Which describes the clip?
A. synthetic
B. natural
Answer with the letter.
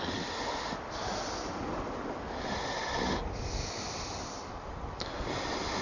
B